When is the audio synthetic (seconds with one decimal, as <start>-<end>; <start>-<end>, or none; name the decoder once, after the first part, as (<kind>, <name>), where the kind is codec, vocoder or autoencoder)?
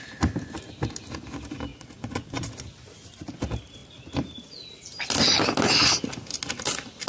1.7-2.5 (vocoder, Vocos)